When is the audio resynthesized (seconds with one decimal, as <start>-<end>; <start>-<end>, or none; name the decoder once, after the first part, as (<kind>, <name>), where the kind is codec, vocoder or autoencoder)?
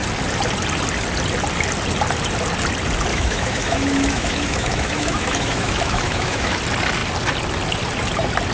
3.1-6.6 (autoencoder, DAC-VAE)